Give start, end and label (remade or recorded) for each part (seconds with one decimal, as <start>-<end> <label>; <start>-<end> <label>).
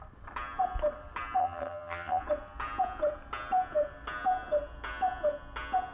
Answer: 0.0-1.4 recorded; 1.4-2.2 remade; 2.2-5.9 recorded